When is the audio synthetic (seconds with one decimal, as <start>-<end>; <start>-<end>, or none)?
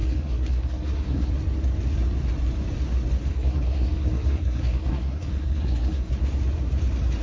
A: 0.0-1.3; 3.3-6.1